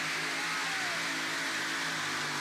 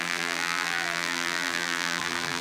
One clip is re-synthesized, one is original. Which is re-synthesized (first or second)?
second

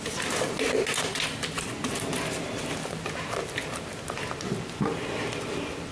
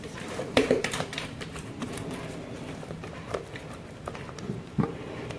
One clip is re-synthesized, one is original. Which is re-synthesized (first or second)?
second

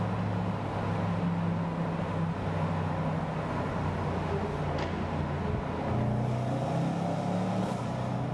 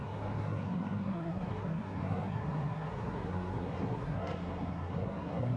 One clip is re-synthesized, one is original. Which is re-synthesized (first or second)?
second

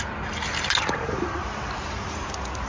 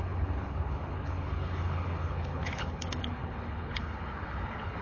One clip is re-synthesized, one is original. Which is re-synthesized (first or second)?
second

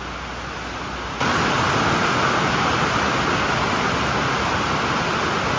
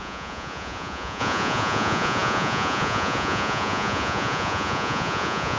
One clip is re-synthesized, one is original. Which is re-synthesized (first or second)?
second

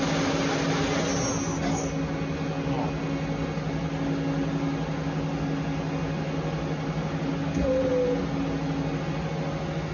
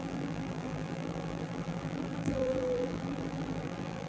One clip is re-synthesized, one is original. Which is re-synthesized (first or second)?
second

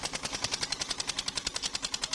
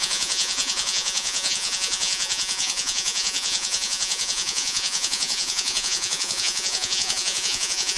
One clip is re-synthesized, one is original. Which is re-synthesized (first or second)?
second